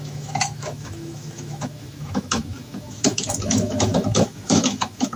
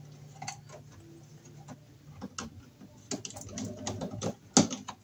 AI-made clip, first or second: first